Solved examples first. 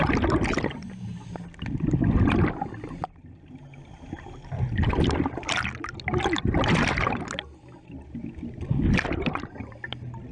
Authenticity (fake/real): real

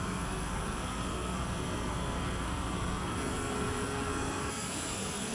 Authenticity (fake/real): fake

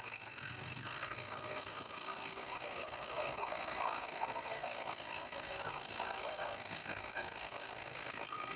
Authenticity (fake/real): fake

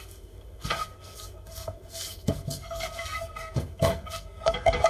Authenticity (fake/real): fake